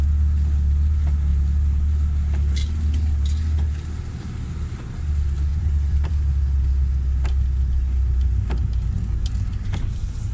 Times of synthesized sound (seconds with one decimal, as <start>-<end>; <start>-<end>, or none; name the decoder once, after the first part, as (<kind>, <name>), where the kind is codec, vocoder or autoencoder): 5.5-6.1 (vocoder, BigVGAN v2)